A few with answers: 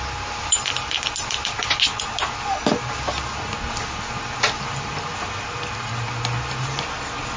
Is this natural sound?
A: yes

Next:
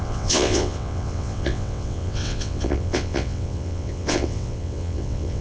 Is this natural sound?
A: no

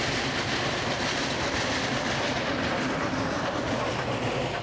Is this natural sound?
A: yes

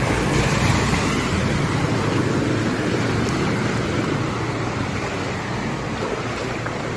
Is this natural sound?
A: yes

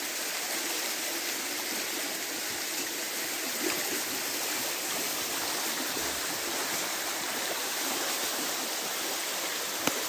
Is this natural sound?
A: yes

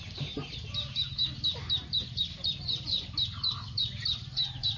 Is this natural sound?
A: yes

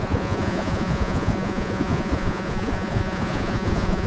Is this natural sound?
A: no